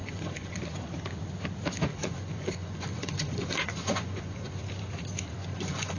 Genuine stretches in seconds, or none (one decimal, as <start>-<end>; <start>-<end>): 0.6-1.9; 4.6-5.4